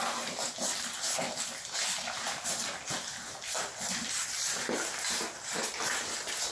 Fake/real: real